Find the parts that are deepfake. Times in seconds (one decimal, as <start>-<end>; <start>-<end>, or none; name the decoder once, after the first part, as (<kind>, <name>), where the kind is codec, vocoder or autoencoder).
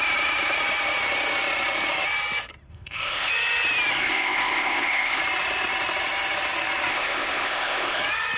2.7-3.3 (codec, ZipCodec); 4.0-5.2; 6.9-8.0